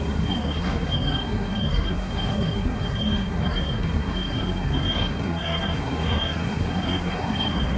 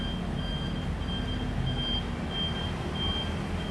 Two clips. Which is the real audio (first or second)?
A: second